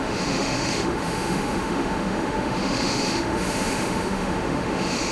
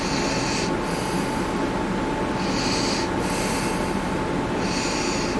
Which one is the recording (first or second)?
second